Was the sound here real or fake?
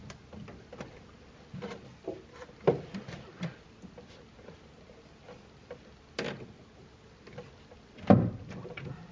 real